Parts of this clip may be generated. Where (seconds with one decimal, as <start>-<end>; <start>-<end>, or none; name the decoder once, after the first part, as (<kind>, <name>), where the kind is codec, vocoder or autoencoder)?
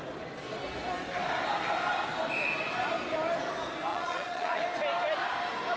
3.9-4.6 (vocoder, Vocos)